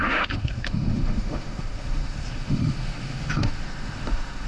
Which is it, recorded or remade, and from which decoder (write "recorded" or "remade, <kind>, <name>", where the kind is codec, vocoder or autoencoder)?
remade, autoencoder, DAC-VAE